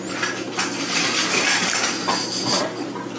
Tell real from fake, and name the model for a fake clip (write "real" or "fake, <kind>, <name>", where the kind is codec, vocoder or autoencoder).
real